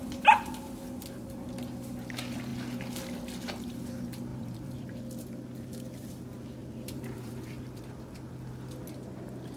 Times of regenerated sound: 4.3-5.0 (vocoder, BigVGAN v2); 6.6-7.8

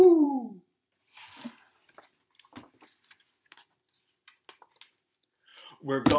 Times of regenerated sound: 0.0-1.0 (vocoder, BigVGAN v2); 5.5-6.2

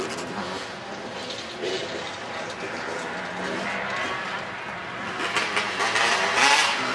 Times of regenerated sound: none